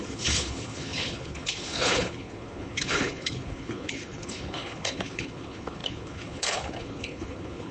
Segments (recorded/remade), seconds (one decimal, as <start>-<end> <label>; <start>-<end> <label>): 0.0-7.7 remade